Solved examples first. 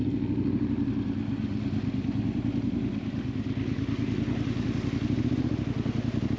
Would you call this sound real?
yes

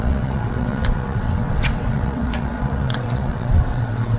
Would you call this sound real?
no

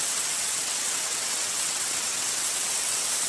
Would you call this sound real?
no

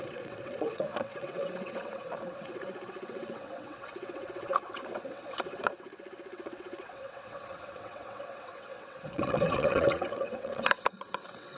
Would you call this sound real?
no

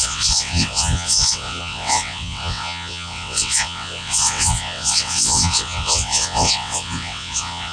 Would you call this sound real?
no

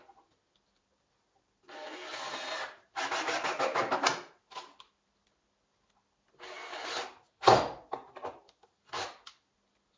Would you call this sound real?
yes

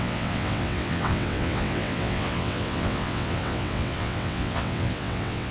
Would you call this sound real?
no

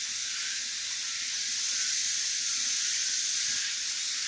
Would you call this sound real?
yes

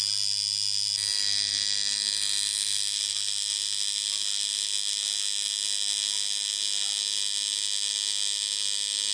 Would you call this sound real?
yes